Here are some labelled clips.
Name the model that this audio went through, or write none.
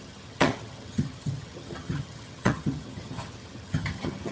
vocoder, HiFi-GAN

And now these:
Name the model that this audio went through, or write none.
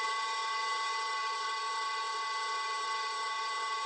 vocoder, HiFi-GAN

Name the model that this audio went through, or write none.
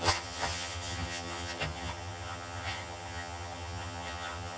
vocoder, HiFi-GAN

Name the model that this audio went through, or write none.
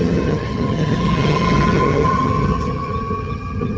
vocoder, HiFi-GAN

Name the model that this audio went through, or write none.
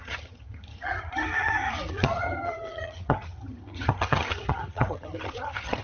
vocoder, HiFi-GAN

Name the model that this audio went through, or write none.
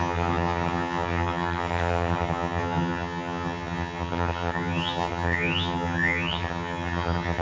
vocoder, HiFi-GAN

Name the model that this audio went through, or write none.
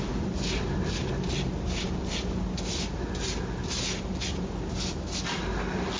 none